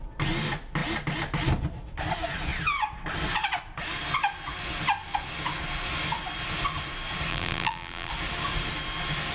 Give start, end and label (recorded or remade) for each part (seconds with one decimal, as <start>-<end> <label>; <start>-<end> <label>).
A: 0.0-7.3 recorded; 7.3-8.1 remade; 8.1-9.3 recorded